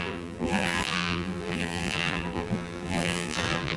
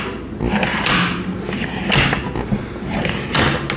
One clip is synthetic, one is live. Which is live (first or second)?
second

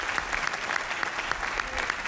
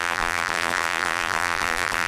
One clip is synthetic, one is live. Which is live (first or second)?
first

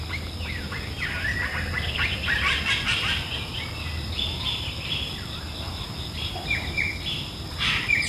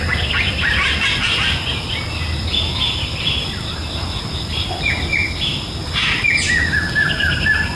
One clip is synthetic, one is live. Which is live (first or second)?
second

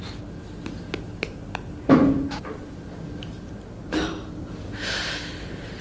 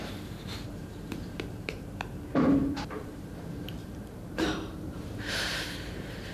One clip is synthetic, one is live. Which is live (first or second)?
first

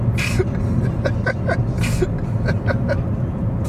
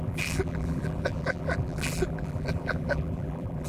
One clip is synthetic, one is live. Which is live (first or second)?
first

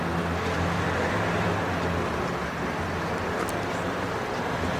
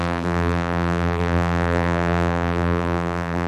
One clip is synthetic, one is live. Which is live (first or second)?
first